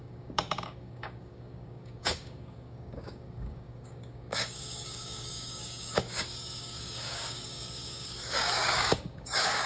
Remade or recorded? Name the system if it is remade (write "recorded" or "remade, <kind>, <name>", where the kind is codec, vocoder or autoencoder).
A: remade, codec, DAC